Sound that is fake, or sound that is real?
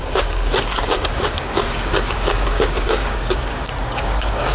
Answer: fake